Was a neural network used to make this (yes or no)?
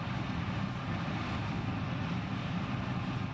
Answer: no